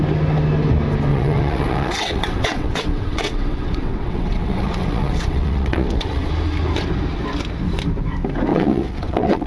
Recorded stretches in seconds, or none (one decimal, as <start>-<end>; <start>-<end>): 0.0-1.1; 6.3-8.5